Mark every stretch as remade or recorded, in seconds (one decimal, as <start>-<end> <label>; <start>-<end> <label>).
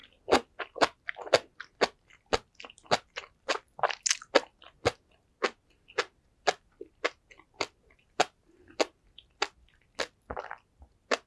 0.0-11.3 recorded